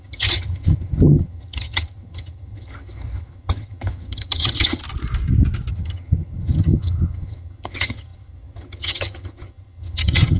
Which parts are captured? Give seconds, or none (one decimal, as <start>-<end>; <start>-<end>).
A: 4.8-5.7